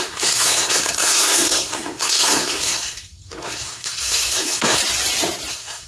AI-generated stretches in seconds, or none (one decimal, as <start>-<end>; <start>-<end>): 0.0-4.8; 5.5-5.9